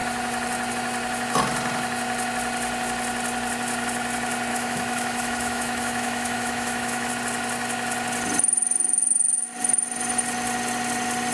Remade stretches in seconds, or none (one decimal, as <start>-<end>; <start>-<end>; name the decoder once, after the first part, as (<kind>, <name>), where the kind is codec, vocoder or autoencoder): 4.5-7.1 (autoencoder, DAC-VAE)